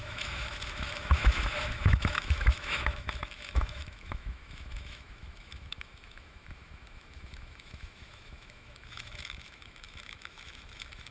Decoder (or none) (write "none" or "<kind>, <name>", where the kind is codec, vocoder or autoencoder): autoencoder, DAC-VAE